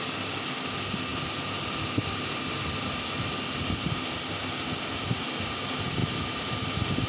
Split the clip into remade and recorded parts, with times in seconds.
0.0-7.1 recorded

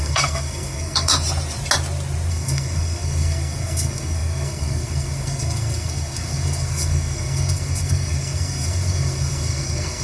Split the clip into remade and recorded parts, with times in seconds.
0.0-1.1 remade; 1.1-2.3 recorded; 2.3-10.0 remade

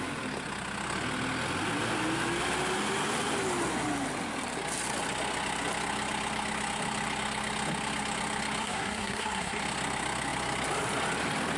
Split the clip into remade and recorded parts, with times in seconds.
0.0-8.6 recorded; 8.6-9.6 remade; 9.6-11.6 recorded